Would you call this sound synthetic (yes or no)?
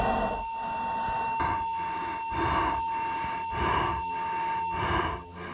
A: no